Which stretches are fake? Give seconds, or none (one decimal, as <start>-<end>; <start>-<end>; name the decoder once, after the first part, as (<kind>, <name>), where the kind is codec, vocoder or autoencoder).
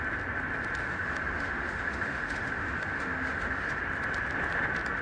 0.8-3.8 (autoencoder, DAC-VAE)